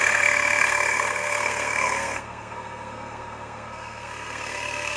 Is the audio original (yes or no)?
no